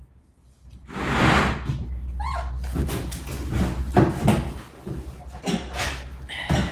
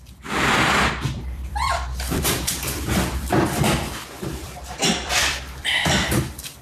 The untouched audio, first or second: first